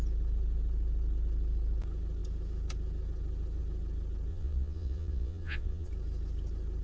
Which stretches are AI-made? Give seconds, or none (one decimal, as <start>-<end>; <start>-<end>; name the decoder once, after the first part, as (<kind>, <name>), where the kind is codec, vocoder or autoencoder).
4.3-5.9 (vocoder, Vocos)